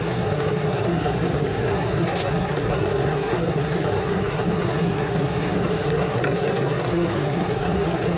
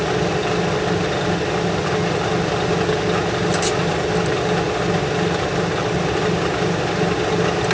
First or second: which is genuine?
second